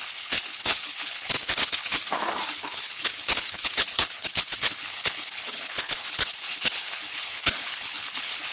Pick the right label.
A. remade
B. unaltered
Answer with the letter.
A